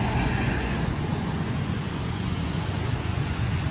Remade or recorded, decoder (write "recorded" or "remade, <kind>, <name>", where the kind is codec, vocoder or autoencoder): remade, vocoder, Vocos